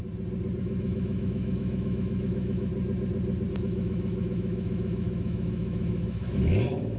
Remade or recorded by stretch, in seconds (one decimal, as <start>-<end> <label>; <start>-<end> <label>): 0.0-0.6 recorded; 0.6-2.7 remade; 2.7-3.5 recorded; 3.5-7.0 remade